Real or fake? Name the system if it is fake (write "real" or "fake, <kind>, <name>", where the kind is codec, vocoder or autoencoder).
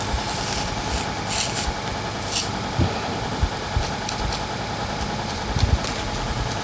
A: real